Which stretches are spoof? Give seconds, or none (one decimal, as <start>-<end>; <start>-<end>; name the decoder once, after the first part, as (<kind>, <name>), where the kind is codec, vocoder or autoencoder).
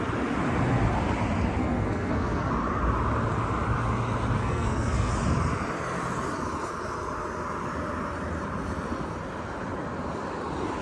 1.6-2.5 (codec, SNAC); 4.4-5.1